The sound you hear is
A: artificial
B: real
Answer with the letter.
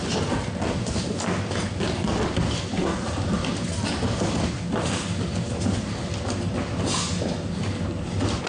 B